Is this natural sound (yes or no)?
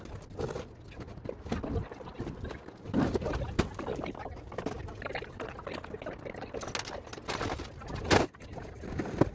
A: yes